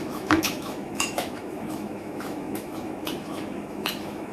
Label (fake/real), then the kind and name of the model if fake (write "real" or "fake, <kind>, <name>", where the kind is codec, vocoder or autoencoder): fake, autoencoder, DAC-VAE